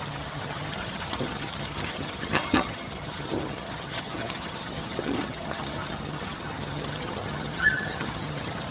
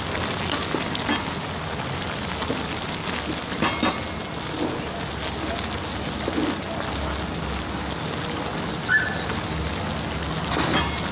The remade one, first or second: first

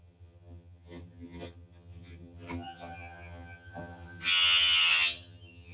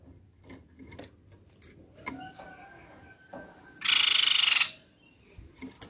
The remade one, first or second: first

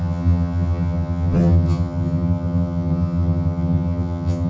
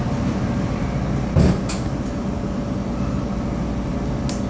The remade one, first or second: first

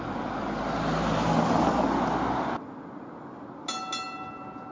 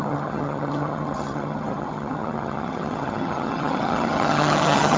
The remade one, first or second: second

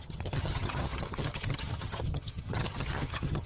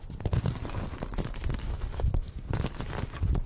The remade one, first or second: first